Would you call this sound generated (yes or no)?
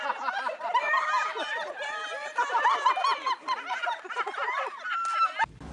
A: no